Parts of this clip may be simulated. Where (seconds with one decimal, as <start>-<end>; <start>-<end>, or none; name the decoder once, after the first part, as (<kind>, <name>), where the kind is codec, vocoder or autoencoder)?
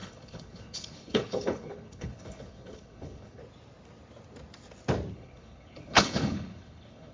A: 0.0-3.4 (codec, HILCodec); 5.1-7.1